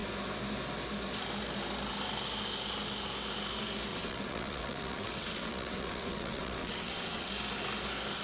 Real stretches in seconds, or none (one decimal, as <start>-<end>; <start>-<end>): 0.0-3.9; 7.3-8.2